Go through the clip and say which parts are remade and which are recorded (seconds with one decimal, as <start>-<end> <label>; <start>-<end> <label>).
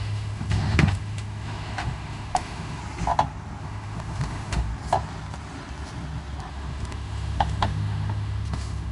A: 0.0-2.8 remade; 2.8-3.6 recorded; 3.6-4.7 remade; 4.7-6.5 recorded; 6.5-8.9 remade